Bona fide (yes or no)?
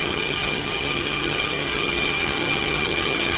no